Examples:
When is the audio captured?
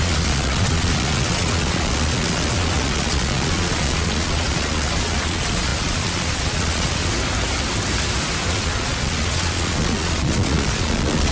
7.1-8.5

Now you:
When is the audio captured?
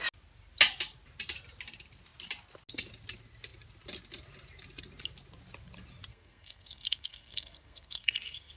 0.0-6.1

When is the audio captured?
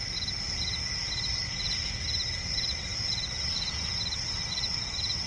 0.0-5.3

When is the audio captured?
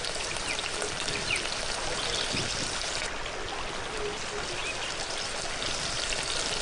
0.0-6.6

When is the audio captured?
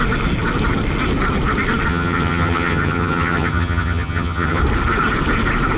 0.0-1.9; 4.6-5.8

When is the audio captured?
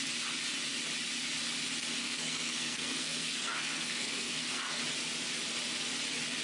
0.0-2.0; 4.8-6.4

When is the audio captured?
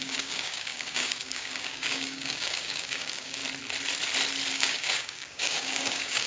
3.4-4.5